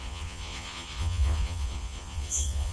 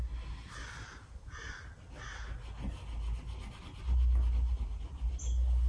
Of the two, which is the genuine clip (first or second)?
second